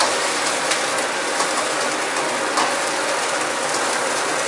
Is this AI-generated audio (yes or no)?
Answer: yes